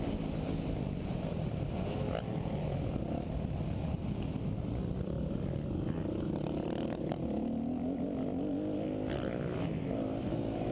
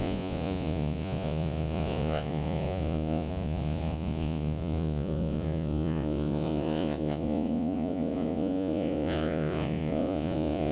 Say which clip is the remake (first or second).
second